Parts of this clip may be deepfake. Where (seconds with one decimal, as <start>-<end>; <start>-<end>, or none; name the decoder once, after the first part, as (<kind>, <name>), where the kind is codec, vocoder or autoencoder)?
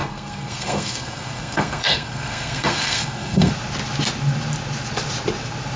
0.0-3.5 (codec, SNAC)